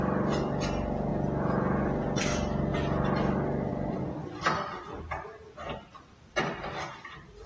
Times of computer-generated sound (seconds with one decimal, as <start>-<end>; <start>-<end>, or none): 1.1-2.2; 5.9-6.4